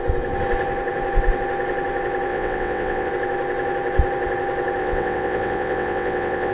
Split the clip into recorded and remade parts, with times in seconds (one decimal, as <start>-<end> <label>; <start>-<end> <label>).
0.0-2.3 recorded; 2.3-3.1 remade; 3.1-4.8 recorded; 4.8-6.5 remade